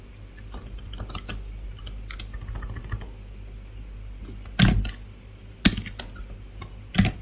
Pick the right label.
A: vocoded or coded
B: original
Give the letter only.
B